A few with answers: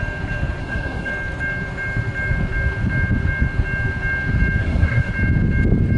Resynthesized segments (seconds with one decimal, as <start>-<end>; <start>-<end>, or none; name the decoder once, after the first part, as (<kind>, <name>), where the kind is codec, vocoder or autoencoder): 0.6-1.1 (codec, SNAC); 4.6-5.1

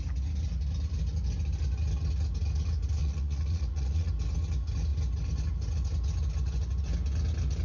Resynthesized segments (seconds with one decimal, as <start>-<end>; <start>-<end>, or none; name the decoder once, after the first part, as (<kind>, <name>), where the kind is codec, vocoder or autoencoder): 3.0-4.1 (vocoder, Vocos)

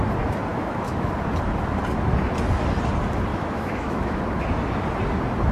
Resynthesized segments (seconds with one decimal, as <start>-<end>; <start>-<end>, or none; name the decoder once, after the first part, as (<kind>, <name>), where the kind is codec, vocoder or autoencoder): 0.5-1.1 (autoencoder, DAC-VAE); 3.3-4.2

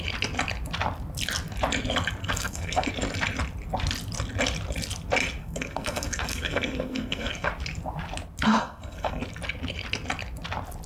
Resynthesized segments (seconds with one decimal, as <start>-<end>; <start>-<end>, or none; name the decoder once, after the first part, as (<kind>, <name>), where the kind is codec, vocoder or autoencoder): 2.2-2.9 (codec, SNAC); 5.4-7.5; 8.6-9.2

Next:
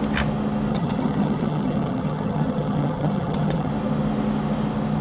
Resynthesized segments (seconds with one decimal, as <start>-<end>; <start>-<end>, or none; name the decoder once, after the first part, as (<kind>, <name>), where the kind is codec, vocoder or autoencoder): 0.7-3.7 (vocoder, HiFi-GAN)

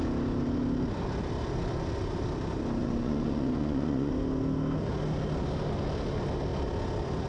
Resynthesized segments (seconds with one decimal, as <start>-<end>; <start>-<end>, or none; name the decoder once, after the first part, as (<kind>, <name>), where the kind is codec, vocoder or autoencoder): 2.8-4.1 (vocoder, Vocos)

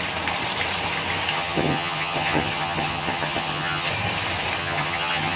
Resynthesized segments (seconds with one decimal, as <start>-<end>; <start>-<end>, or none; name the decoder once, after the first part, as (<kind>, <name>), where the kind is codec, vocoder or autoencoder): 1.3-3.9 (vocoder, HiFi-GAN); 4.6-5.4

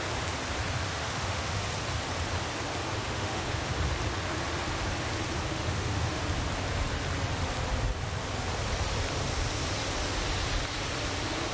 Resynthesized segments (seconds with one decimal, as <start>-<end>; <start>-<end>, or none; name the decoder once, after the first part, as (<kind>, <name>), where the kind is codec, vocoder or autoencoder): 0.9-1.6 (autoencoder, DAC-VAE); 3.0-3.7; 5.5-6.2